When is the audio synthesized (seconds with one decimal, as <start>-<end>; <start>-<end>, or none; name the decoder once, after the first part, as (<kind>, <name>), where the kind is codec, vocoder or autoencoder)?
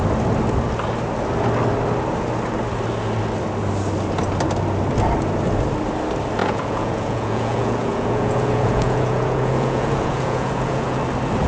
6.4-11.0 (vocoder, Vocos)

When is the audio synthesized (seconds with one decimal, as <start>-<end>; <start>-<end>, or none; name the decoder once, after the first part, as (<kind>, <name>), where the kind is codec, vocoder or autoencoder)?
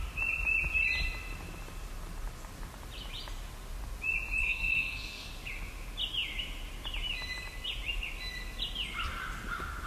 4.4-5.3 (codec, SNAC)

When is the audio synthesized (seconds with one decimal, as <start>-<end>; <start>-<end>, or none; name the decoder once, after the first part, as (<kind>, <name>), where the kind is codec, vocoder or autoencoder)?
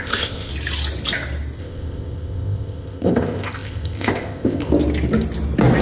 0.0-0.5 (codec, ZipCodec); 1.6-4.7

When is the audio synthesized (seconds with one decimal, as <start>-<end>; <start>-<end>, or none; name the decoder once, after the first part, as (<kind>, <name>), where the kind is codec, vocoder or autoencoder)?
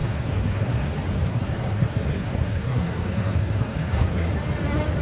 0.0-0.9 (codec, SNAC); 1.3-4.3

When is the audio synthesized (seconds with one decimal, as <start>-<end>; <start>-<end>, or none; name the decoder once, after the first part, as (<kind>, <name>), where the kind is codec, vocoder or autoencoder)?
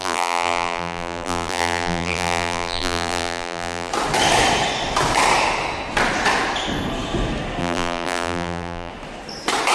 0.0-3.9 (vocoder, BigVGAN v2); 7.6-8.9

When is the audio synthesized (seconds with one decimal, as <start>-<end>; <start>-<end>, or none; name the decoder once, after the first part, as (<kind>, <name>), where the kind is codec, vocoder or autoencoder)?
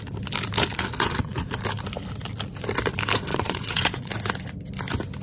0.9-1.6 (vocoder, Vocos); 3.3-4.1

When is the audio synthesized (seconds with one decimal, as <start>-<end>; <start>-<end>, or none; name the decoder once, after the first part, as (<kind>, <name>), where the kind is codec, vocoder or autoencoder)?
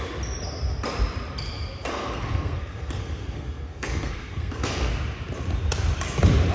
1.9-4.9 (codec, SNAC)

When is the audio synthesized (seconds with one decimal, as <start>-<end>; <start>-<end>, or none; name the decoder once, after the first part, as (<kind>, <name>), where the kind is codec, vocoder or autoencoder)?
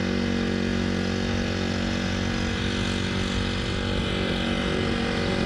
none